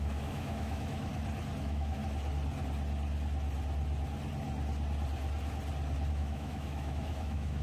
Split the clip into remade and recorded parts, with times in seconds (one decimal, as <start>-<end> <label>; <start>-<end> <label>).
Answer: 0.0-1.1 remade; 1.1-1.6 recorded; 1.6-2.0 remade; 2.0-6.1 recorded; 6.1-7.6 remade